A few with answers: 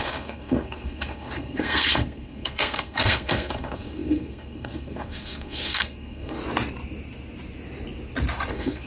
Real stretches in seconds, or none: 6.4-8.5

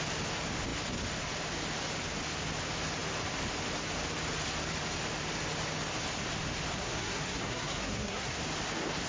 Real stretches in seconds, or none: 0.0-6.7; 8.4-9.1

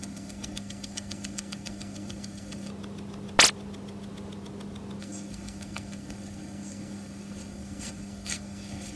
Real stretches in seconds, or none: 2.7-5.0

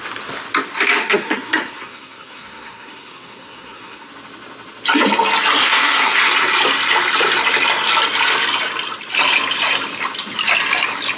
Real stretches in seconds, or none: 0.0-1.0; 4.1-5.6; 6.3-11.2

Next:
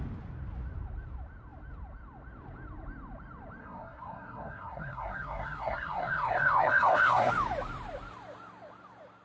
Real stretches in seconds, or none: 0.0-3.6; 7.3-9.2

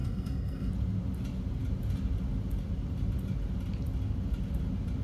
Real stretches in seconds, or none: 0.7-5.0

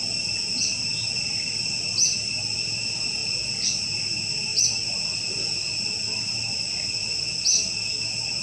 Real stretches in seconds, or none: 0.0-8.4